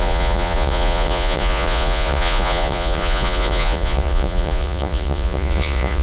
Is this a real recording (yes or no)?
no